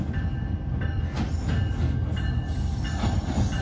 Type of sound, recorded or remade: recorded